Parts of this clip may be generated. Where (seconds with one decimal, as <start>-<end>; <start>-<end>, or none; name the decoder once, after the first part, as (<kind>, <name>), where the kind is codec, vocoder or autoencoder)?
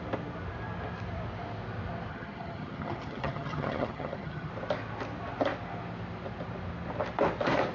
2.1-4.5 (vocoder, HiFi-GAN)